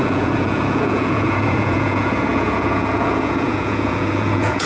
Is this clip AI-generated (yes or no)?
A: yes